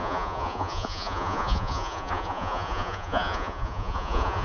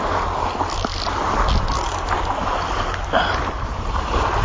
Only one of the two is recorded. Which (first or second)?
second